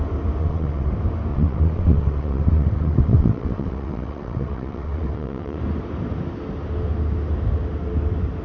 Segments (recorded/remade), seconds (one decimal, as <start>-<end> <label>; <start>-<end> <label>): 0.0-0.4 recorded; 0.4-0.9 remade; 0.9-1.3 recorded; 1.3-5.6 remade; 5.6-8.4 recorded